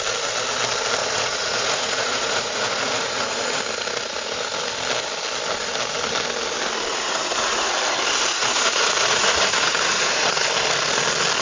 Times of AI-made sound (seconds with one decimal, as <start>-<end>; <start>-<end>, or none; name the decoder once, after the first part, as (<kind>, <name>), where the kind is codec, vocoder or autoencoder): 1.0-3.6 (vocoder, Vocos); 6.9-7.7; 8.3-10.3